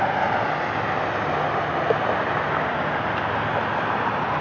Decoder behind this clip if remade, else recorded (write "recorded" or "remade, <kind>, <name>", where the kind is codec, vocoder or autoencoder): recorded